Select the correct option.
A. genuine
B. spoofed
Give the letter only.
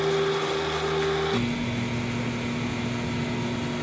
A